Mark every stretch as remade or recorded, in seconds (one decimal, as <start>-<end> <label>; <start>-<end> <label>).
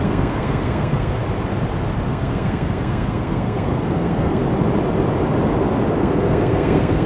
0.0-1.2 remade; 1.2-2.1 recorded; 2.1-4.4 remade; 4.4-6.0 recorded; 6.0-7.1 remade